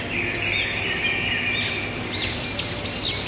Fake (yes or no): no